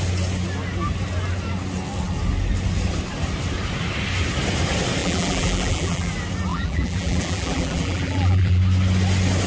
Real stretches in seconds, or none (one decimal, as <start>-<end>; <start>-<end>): 0.0-5.0; 6.1-6.5; 8.6-9.5